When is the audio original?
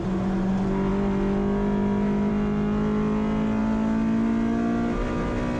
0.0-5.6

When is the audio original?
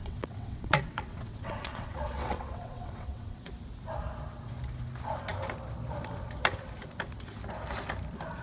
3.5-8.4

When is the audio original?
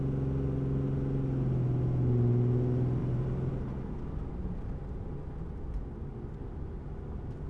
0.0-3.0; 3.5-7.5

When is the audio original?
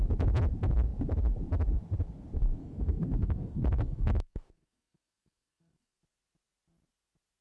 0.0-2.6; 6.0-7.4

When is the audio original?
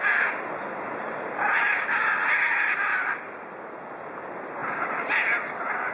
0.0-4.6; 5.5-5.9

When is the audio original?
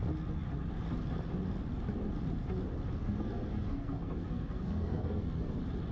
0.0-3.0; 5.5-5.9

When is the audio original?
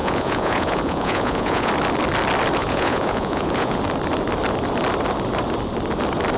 1.7-2.6; 3.8-6.4